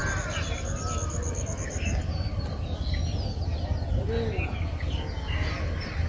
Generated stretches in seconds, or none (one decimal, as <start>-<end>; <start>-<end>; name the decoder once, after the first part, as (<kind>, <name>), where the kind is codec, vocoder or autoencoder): none